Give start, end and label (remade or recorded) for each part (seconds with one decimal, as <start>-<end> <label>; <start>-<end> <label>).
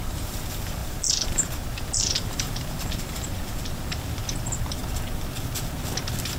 0.0-4.8 remade; 4.8-6.4 recorded